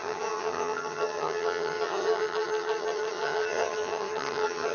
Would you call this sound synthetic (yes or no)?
yes